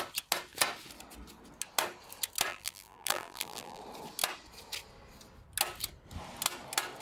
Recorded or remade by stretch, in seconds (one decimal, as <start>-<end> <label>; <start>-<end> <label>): 0.0-2.5 recorded; 2.5-3.8 remade; 3.8-7.0 recorded